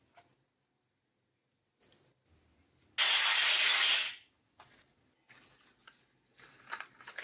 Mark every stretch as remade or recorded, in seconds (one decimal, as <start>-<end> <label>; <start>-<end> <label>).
0.0-7.2 recorded